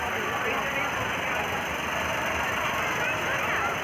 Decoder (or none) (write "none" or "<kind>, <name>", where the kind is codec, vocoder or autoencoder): none